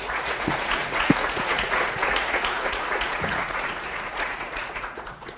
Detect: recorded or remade remade